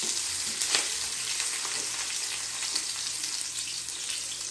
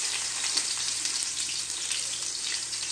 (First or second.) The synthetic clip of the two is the second